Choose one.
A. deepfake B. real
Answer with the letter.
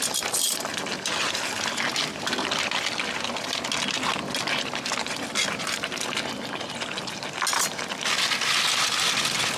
B